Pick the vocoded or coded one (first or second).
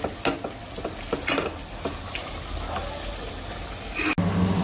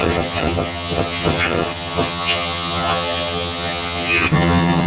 second